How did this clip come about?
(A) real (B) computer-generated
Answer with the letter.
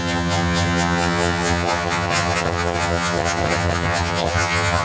B